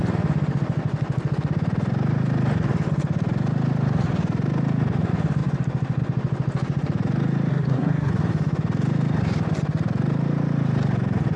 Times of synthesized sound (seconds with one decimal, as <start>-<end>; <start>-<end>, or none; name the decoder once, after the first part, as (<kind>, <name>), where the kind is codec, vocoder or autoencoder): 7.5-8.1 (codec, SNAC)